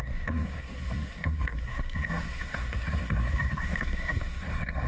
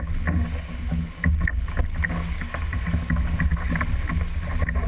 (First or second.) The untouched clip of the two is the second